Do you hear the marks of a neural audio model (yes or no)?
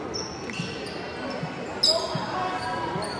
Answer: no